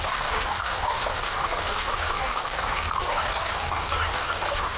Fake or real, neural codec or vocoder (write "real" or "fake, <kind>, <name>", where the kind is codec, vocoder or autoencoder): fake, codec, DAC